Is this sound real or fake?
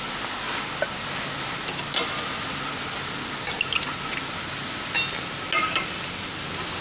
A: real